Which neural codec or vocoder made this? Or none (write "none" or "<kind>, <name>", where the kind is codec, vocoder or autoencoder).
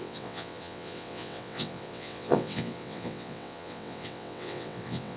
vocoder, WaveNeXt